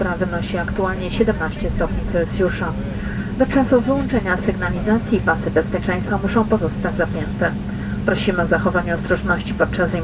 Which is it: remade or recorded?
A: recorded